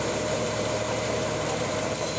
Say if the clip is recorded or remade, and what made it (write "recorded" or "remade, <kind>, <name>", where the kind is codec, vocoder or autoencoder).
remade, vocoder, BigVGAN v2